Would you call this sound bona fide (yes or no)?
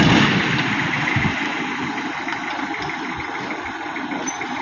yes